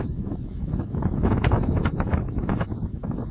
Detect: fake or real fake